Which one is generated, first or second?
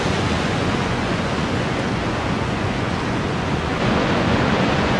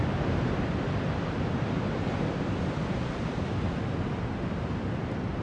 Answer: first